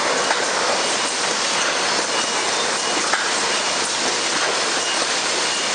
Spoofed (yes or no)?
no